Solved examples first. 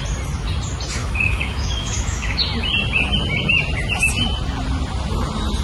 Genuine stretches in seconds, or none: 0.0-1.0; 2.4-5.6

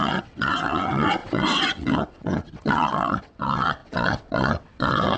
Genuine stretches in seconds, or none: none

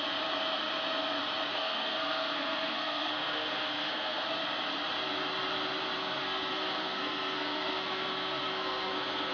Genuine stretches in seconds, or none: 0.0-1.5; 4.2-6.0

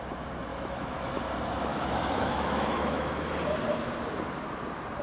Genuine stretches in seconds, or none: 0.0-0.5; 1.2-1.7; 3.3-5.0